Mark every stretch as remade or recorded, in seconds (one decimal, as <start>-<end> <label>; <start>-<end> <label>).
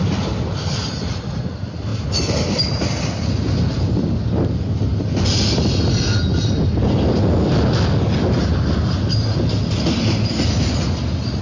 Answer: 0.0-11.4 recorded